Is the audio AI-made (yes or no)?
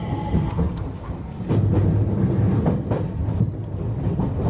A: no